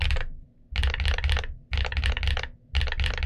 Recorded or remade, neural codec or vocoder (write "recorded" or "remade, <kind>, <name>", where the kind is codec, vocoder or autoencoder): recorded